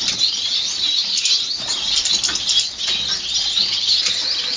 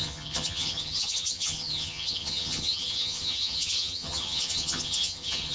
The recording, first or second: first